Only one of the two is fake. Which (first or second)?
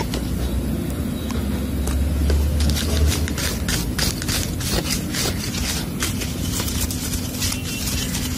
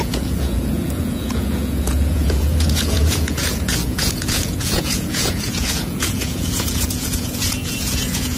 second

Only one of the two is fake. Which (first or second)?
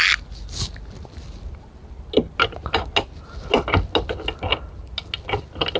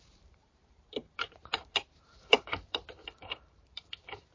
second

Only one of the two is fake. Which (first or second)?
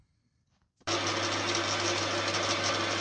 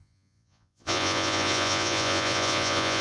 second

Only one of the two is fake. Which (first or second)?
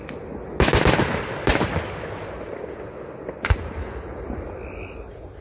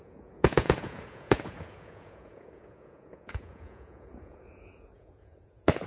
second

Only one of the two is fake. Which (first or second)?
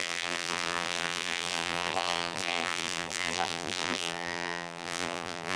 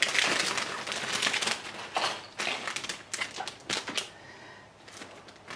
first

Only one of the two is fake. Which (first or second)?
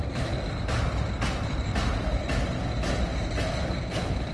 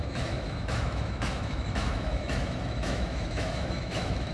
second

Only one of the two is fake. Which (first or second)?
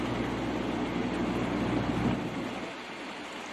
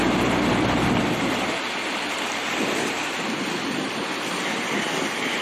second